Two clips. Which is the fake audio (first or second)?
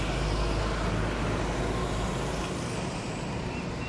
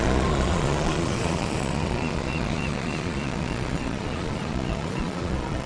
second